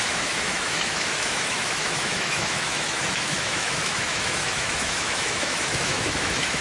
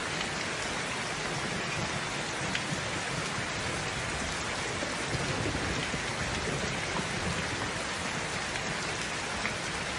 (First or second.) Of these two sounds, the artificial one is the first